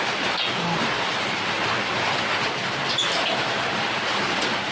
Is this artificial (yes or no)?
no